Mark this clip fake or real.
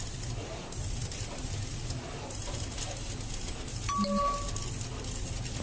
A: real